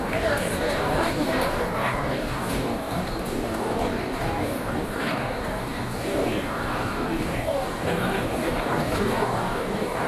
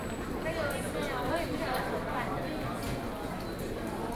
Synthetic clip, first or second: first